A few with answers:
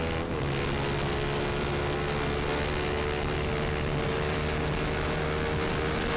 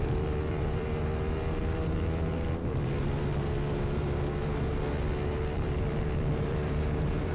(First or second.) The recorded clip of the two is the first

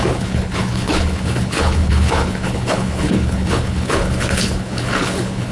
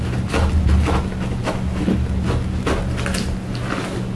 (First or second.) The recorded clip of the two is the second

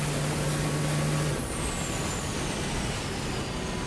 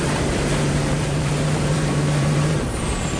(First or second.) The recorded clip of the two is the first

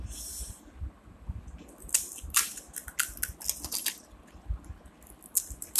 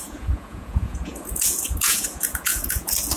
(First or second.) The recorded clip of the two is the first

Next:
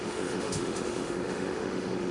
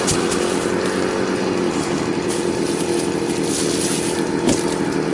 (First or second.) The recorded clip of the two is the second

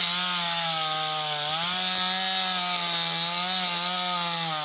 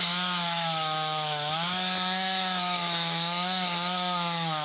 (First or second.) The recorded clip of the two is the first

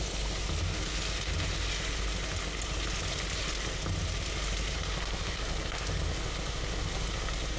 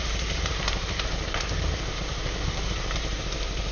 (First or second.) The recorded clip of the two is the first